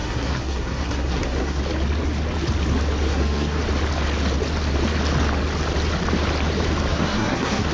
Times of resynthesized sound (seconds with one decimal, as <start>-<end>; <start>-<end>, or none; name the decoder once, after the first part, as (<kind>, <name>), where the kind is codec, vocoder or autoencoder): 0.0-1.6 (codec, SNAC); 3.1-3.6; 6.9-7.7

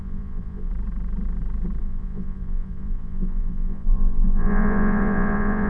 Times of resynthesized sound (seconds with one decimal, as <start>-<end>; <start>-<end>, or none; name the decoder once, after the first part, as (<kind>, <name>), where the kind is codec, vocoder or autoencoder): 0.0-0.7 (vocoder, Vocos); 1.8-5.7

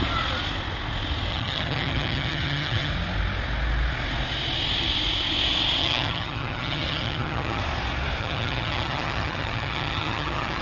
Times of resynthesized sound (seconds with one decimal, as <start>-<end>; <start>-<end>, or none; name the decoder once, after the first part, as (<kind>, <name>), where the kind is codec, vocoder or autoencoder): 1.3-2.9 (vocoder, HiFi-GAN); 5.8-7.6; 8.2-10.6

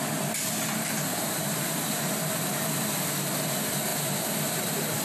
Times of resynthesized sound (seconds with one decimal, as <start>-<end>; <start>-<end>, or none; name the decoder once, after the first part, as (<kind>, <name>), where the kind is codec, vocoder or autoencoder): 1.1-2.6 (vocoder, BigVGAN v2)

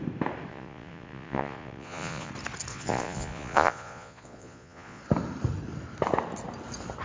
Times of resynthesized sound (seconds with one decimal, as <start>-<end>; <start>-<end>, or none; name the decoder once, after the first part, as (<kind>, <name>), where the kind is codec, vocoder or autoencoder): 0.5-2.3 (vocoder, Vocos); 2.7-5.0